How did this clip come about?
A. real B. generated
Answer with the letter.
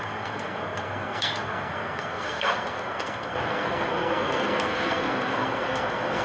B